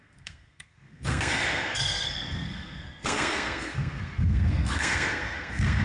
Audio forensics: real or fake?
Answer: fake